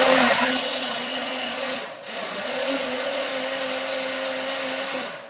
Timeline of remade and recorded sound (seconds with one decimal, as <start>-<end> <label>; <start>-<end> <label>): 0.0-3.3 remade; 3.3-5.3 recorded